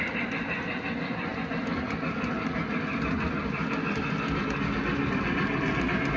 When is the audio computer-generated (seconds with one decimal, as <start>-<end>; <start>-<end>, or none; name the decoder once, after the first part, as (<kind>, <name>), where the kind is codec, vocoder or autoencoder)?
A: none